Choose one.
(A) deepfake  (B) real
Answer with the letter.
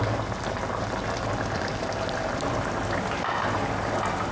B